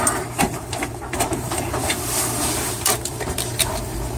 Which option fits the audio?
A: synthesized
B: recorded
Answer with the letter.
A